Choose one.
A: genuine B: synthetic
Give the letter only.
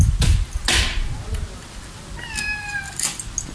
A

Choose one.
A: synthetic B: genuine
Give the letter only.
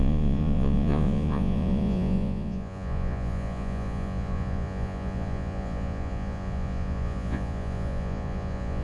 A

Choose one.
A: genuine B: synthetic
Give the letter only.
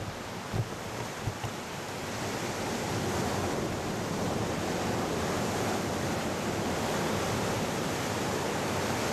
A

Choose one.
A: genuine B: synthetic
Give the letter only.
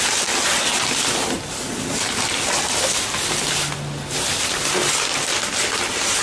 A